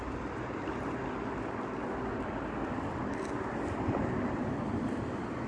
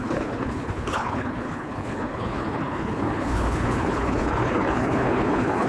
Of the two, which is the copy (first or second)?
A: second